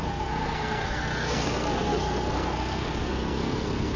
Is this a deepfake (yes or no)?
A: yes